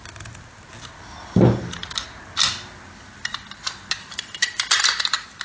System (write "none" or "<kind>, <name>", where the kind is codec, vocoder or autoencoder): none